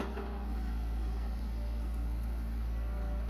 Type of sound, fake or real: fake